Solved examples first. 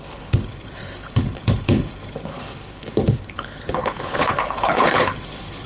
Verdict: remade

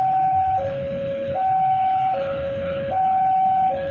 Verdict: remade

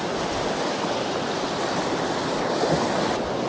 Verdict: recorded